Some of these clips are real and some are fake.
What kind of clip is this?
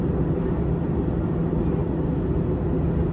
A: real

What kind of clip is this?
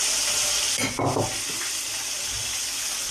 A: real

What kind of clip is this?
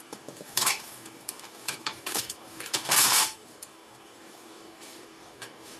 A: fake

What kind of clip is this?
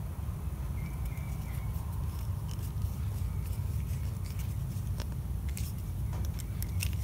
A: real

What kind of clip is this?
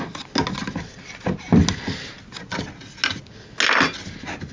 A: real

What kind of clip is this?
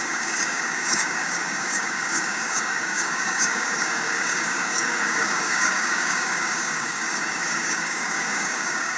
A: fake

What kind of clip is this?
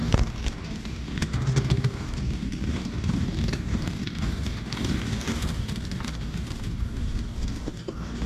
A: fake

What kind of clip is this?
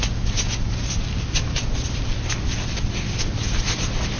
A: real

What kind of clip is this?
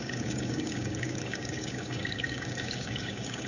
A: fake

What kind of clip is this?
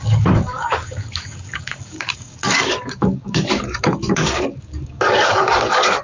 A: fake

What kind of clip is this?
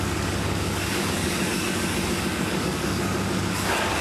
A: fake